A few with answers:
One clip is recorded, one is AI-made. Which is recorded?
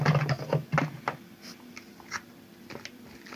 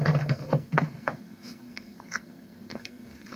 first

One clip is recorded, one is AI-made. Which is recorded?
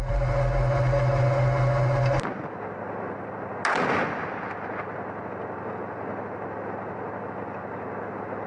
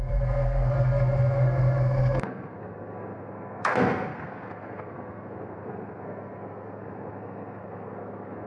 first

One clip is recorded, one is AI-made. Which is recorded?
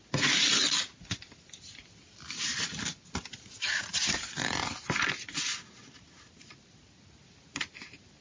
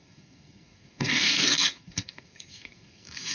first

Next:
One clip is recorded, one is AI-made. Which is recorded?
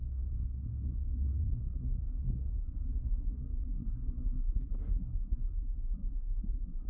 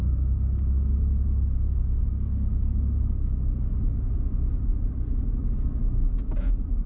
second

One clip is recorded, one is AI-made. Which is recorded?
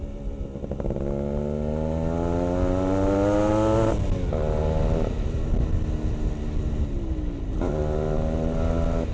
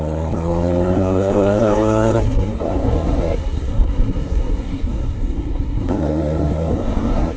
first